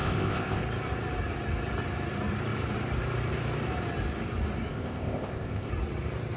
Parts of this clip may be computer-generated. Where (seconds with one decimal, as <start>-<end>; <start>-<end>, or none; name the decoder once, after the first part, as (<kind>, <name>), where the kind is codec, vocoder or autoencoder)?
0.0-0.6 (codec, ZipCodec); 4.7-5.7